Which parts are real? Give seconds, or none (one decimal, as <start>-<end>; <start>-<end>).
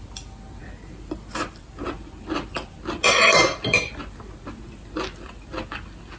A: 0.0-0.6; 1.6-6.2